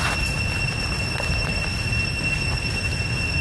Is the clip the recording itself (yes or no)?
yes